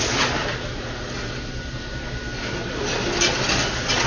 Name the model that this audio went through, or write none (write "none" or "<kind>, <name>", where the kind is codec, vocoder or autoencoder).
none